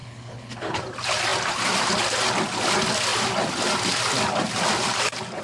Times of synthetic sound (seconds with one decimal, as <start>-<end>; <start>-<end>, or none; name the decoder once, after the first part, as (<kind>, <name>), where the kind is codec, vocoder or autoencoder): 0.0-0.8 (codec, HILCodec)